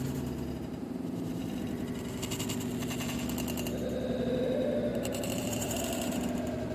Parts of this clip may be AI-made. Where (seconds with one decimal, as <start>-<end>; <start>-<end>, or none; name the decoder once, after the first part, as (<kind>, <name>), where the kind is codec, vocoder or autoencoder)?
0.8-1.5 (vocoder, BigVGAN v2); 4.9-5.8